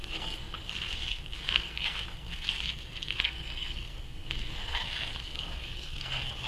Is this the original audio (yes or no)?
no